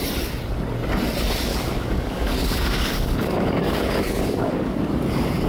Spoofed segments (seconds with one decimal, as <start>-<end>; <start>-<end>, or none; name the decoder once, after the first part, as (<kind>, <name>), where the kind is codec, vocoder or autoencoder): 1.5-4.8 (codec, DAC)